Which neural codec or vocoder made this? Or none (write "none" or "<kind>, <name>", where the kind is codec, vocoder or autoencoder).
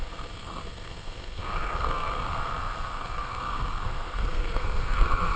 codec, SNAC